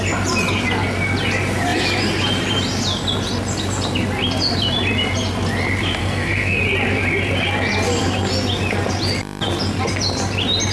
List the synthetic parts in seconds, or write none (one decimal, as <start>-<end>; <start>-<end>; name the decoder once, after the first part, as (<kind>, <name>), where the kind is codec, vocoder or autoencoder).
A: 6.0-6.6 (codec, SNAC)